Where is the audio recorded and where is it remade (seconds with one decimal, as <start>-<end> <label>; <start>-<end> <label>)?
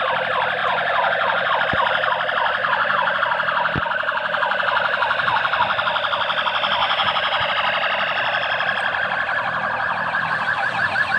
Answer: 0.0-0.6 recorded; 0.6-1.5 remade; 1.5-2.6 recorded; 2.6-3.2 remade; 3.2-6.8 recorded; 6.8-7.5 remade; 7.5-11.2 recorded